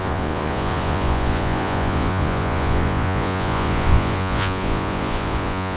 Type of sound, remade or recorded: remade